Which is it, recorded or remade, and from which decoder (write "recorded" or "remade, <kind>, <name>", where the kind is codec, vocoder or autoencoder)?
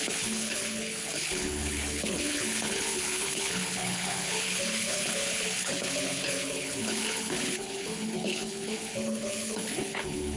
remade, codec, HILCodec